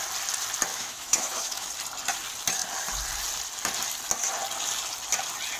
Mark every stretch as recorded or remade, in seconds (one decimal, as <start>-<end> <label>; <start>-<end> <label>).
0.0-0.7 recorded; 0.7-1.7 remade; 1.7-5.6 recorded